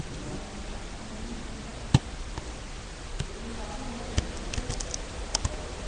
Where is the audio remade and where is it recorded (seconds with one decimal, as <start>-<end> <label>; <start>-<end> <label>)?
0.0-5.9 recorded